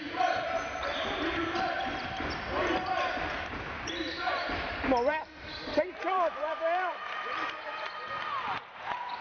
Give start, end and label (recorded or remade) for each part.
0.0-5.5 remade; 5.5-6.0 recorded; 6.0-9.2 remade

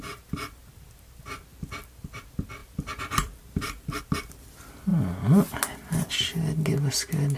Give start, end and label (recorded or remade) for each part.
0.0-2.6 recorded; 2.6-4.0 remade; 4.0-7.4 recorded

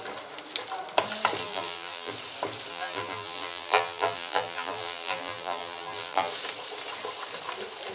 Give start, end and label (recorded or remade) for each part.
0.0-1.4 recorded; 1.4-2.1 remade; 2.1-2.7 recorded; 2.7-6.3 remade; 6.3-7.9 recorded